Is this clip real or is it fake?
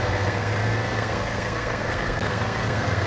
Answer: fake